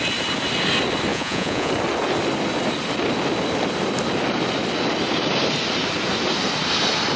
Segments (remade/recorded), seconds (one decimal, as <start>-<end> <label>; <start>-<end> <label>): 0.0-1.1 recorded; 1.1-1.7 remade; 1.7-7.2 recorded